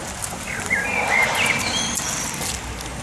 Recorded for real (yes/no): yes